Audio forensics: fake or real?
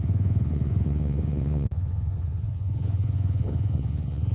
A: fake